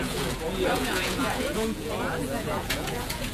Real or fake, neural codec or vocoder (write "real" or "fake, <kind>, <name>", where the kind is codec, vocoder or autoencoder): fake, vocoder, Vocos